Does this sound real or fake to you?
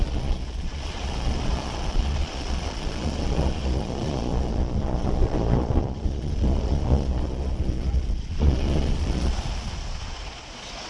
fake